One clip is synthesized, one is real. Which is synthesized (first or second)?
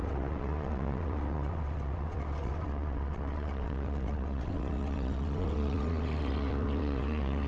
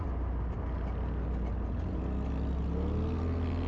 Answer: first